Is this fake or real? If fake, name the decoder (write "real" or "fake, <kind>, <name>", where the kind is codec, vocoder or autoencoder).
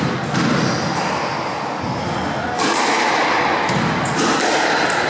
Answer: real